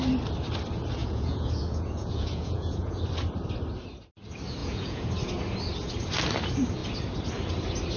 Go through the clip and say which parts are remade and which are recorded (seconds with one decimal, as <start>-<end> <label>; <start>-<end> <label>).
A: 0.0-1.0 recorded; 1.0-3.0 remade; 3.0-4.6 recorded; 4.6-5.1 remade; 5.1-8.0 recorded